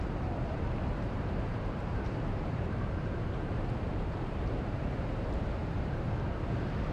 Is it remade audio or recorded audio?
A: remade